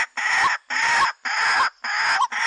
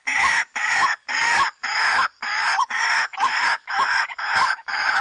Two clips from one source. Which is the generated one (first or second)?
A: second